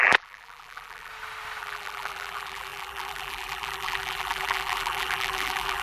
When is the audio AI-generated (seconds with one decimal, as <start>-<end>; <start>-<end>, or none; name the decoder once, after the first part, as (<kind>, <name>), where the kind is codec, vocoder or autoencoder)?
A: 0.0-1.1 (vocoder, BigVGAN v2); 1.6-5.8